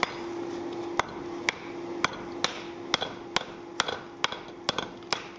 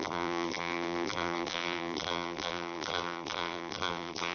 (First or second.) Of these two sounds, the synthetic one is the second